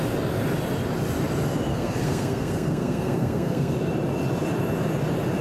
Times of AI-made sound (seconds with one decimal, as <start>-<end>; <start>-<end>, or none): 1.7-3.7